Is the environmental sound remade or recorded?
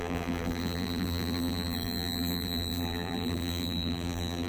remade